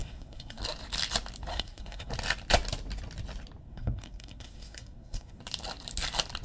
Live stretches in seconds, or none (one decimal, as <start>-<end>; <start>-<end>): 0.6-1.5; 2.1-3.6; 5.4-6.4